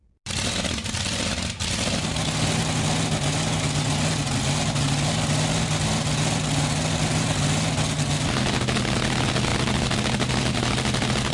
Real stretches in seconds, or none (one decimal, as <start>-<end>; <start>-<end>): 0.0-11.3